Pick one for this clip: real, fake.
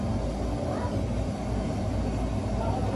real